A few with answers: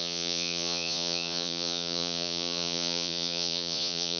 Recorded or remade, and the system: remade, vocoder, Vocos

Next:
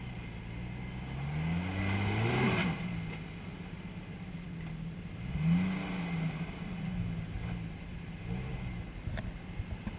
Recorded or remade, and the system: recorded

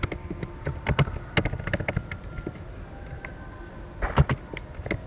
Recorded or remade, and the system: recorded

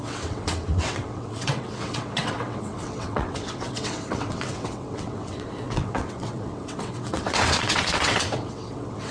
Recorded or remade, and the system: remade, vocoder, WaveNeXt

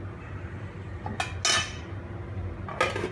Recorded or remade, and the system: recorded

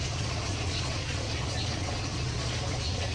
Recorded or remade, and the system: remade, vocoder, Vocos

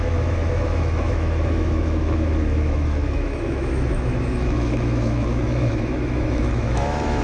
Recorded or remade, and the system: remade, autoencoder, DAC-VAE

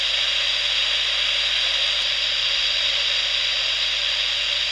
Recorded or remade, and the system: recorded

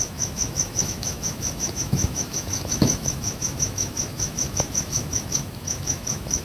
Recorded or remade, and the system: remade, autoencoder, DAC-VAE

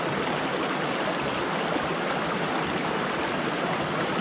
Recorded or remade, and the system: recorded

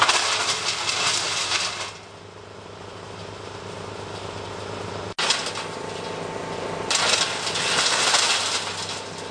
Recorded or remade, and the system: recorded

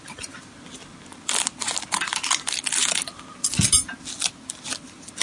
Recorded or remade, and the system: recorded